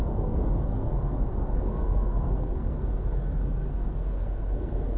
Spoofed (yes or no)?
yes